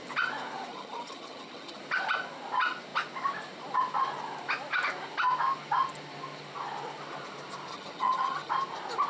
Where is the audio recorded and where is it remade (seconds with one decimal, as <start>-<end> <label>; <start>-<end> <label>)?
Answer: 0.0-0.7 recorded; 0.7-1.8 remade; 1.8-7.7 recorded; 7.7-8.5 remade; 8.5-9.1 recorded